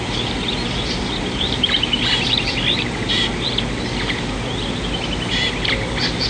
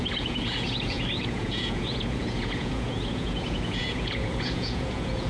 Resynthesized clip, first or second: second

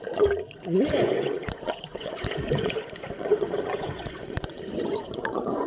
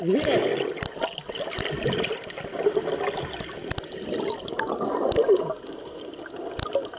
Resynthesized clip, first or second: first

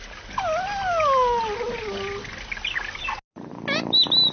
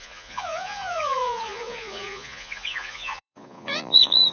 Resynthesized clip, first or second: second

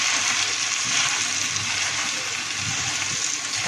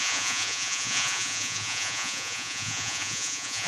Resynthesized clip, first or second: second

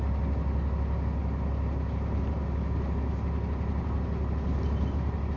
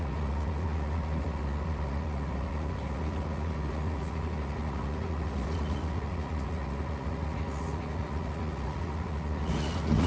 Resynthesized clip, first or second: second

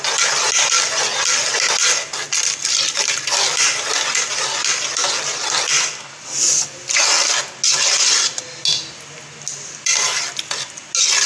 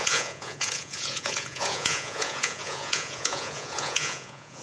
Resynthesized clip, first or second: second